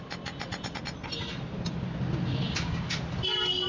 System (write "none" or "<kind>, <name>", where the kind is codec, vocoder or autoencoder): none